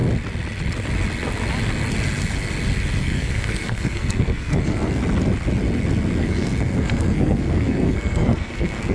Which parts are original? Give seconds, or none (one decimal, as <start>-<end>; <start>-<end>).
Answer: 0.0-3.0; 5.0-6.2